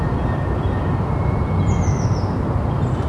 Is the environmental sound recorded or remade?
recorded